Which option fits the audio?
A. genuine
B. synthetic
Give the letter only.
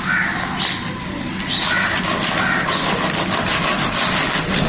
A